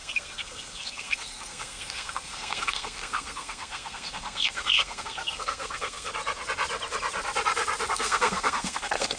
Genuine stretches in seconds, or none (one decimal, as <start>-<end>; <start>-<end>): 6.1-7.9